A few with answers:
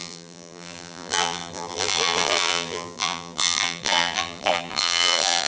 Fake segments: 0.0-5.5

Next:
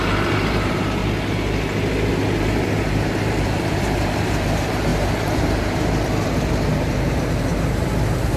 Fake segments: 0.0-1.0; 2.4-8.4

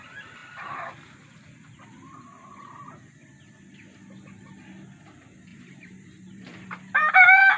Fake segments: 5.5-7.1

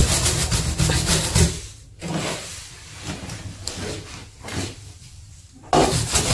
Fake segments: 0.0-3.8; 4.2-5.6

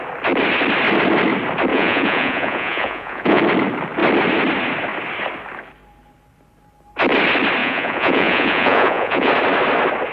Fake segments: 1.7-3.4; 7.6-9.3

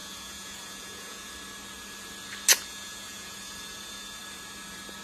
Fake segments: 0.0-1.3; 2.7-4.2